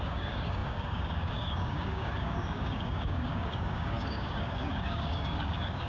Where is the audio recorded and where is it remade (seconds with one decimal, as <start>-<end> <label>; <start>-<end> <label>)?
0.0-5.9 remade